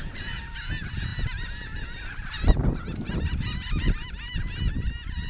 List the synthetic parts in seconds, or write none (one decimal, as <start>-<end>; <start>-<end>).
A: 0.0-5.3